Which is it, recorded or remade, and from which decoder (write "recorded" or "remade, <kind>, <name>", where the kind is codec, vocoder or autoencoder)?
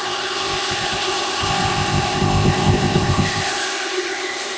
remade, codec, ZipCodec